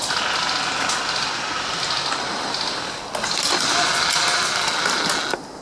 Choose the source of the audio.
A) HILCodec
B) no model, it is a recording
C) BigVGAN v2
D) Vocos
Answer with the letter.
B